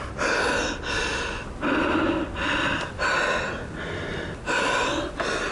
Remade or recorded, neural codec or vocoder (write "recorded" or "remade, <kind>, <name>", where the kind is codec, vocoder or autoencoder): recorded